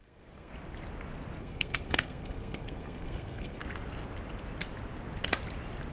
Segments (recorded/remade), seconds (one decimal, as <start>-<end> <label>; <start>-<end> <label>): 0.0-0.5 remade; 0.5-1.4 recorded; 1.4-3.6 remade; 3.6-5.9 recorded